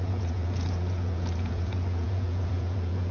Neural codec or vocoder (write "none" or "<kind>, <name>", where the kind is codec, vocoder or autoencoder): vocoder, Vocos